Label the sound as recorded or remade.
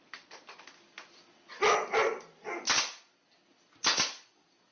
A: recorded